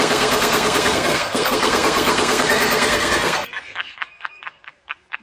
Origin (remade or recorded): remade